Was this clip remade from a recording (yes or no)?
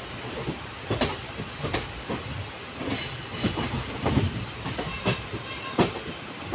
no